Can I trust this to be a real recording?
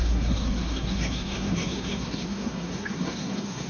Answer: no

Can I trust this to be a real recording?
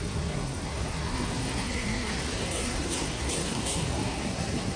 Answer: no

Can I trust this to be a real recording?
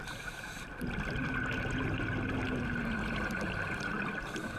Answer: yes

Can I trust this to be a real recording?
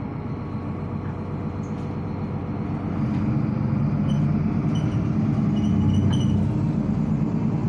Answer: yes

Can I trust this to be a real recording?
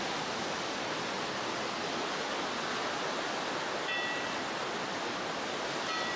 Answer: yes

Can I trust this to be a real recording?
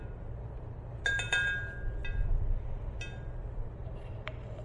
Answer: yes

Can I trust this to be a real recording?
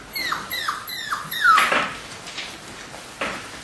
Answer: yes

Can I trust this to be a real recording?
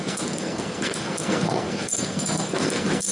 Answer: no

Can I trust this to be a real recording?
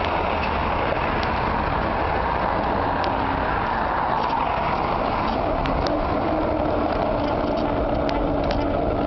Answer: yes